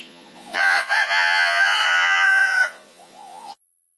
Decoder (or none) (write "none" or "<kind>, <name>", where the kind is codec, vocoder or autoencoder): vocoder, Vocos